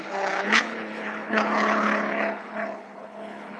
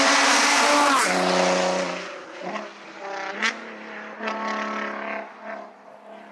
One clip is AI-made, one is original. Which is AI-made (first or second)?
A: first